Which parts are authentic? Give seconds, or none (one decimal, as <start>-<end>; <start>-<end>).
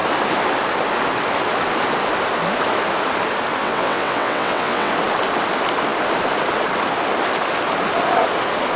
0.0-3.6; 4.9-8.8